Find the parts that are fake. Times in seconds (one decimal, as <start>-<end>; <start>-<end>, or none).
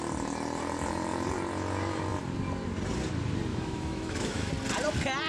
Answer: 3.5-4.5